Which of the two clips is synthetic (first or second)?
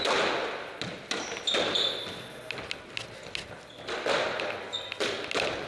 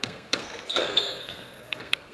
second